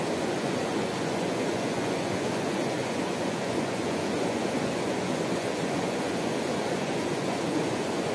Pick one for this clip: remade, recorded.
remade